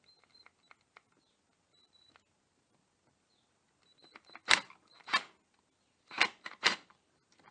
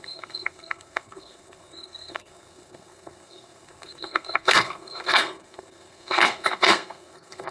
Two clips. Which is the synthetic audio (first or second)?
second